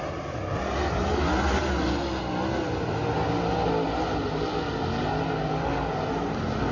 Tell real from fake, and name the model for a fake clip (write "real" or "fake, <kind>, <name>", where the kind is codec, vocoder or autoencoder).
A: real